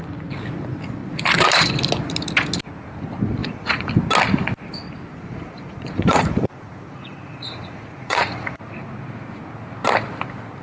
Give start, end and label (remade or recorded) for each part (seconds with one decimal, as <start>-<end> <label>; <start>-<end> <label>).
0.0-3.4 recorded; 3.4-3.9 remade; 3.9-5.1 recorded; 5.1-8.6 remade; 8.6-10.6 recorded